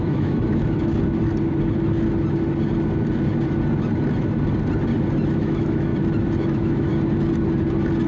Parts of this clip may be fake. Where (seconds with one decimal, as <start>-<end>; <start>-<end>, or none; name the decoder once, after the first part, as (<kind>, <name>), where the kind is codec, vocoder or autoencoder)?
0.0-0.9 (autoencoder, DAC-VAE); 5.3-5.9; 6.4-6.9